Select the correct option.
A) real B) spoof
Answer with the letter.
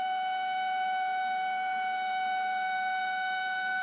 B